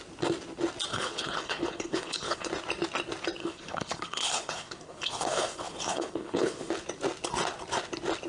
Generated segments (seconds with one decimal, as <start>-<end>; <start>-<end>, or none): 0.9-2.5; 3.4-6.7